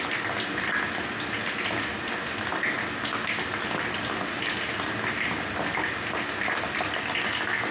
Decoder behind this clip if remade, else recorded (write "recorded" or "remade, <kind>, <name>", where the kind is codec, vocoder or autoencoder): recorded